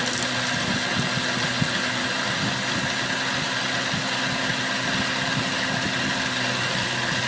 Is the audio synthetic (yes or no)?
no